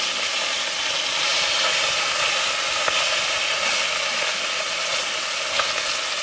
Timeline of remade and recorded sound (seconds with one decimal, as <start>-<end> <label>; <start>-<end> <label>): 0.0-6.2 recorded

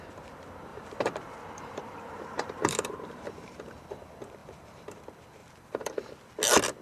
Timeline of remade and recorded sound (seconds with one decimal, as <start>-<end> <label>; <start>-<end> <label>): 0.0-0.7 recorded; 0.7-4.0 remade; 4.0-4.4 recorded; 4.4-5.0 remade; 5.0-5.4 recorded; 5.4-6.1 remade; 6.1-6.8 recorded

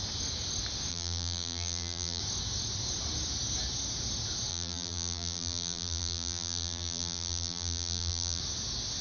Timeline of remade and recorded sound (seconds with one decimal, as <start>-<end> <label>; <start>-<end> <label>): 0.0-0.9 recorded; 0.9-2.2 remade; 2.2-4.5 recorded; 4.5-8.4 remade; 8.4-9.0 recorded

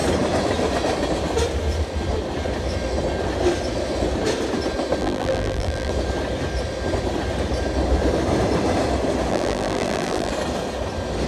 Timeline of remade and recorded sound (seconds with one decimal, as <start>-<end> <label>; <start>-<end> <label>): 0.0-5.0 recorded; 5.0-5.9 remade; 5.9-9.3 recorded; 9.3-10.3 remade; 10.3-11.3 recorded

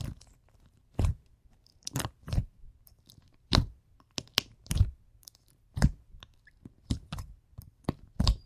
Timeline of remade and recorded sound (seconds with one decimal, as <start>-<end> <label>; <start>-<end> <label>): 0.0-8.5 recorded

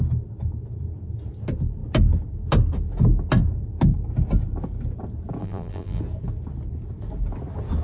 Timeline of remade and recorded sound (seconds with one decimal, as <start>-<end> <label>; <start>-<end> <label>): 0.0-5.4 recorded; 5.4-6.0 remade; 6.0-7.8 recorded

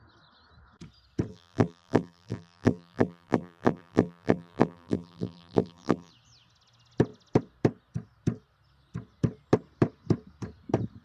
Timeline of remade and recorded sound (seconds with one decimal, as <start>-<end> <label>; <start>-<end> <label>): 0.0-1.3 recorded; 1.3-6.1 remade; 6.1-11.0 recorded